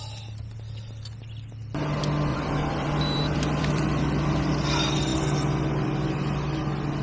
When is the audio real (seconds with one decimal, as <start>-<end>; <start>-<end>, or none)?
0.0-2.3; 4.5-7.0